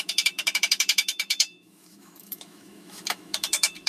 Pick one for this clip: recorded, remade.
remade